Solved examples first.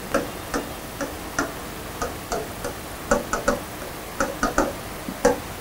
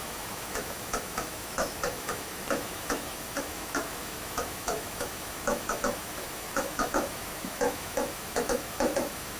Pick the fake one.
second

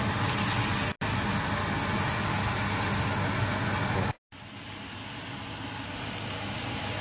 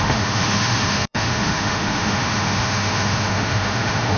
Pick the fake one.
second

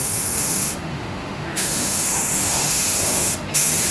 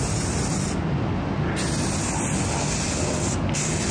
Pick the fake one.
first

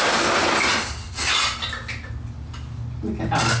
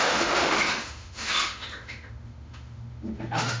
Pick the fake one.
second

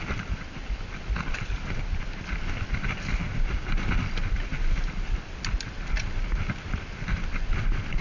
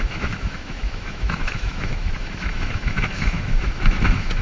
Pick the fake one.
second